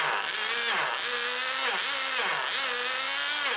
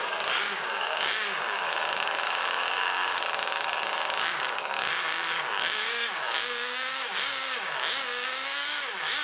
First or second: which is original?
first